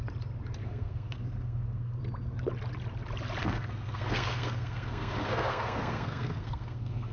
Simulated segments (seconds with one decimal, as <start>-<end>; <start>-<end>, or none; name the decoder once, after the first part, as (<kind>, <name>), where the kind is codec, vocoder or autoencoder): 0.6-2.0 (codec, SNAC); 3.4-7.1